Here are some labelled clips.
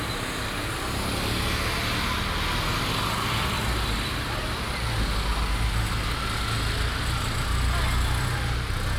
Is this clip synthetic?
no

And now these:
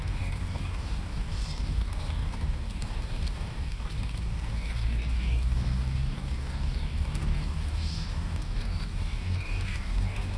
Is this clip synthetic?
yes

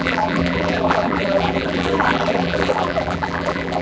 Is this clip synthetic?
yes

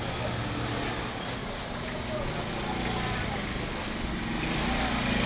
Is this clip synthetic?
no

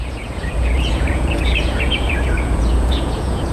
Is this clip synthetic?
yes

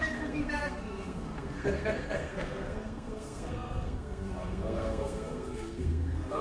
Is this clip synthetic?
yes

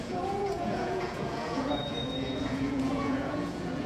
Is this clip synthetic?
yes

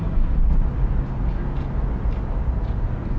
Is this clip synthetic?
no